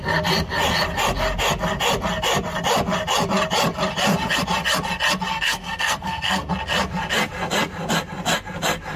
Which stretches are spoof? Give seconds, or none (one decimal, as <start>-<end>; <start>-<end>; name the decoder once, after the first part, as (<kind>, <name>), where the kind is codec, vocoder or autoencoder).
5.3-6.5 (codec, SNAC)